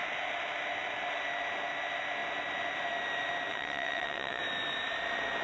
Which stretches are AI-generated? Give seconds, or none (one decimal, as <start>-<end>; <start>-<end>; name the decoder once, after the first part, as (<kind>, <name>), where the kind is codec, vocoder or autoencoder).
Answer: 3.5-4.4 (vocoder, WaveNeXt)